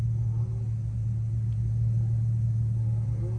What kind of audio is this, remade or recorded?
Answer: recorded